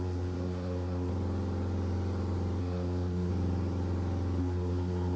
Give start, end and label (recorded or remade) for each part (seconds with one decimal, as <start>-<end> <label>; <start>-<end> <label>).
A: 0.0-1.1 remade; 1.1-2.6 recorded; 2.6-3.3 remade; 3.3-4.4 recorded; 4.4-5.2 remade